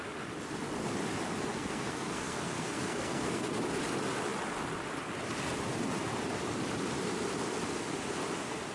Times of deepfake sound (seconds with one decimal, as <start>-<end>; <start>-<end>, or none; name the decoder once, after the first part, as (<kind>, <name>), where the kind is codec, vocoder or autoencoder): 1.5-3.5 (codec, SNAC)